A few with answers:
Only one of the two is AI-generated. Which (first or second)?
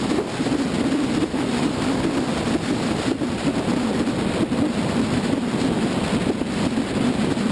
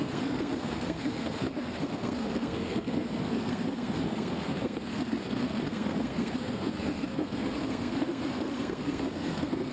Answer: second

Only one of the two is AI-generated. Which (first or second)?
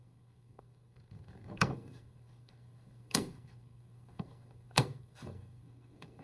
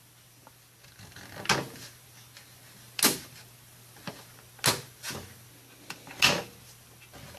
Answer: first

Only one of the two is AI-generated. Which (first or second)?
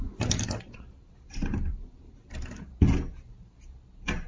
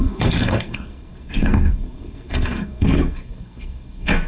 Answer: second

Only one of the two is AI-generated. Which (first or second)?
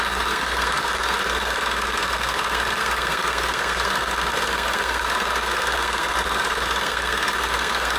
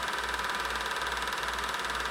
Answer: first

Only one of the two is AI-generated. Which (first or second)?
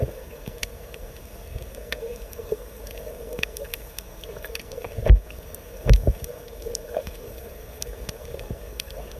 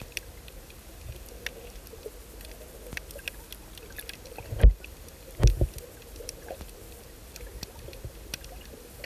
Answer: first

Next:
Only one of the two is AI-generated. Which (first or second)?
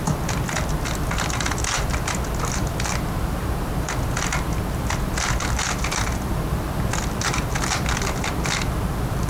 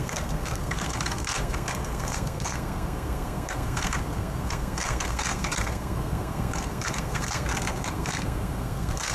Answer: second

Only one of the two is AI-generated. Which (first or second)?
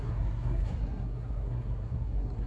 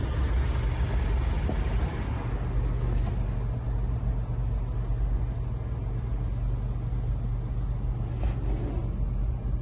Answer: first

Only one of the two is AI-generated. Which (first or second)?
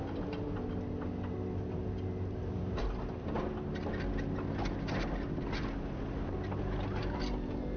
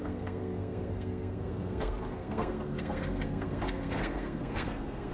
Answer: second